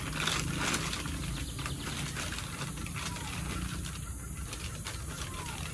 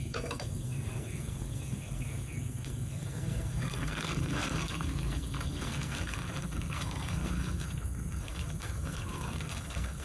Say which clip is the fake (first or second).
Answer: second